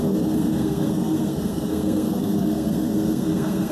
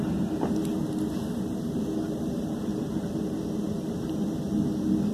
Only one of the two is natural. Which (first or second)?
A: second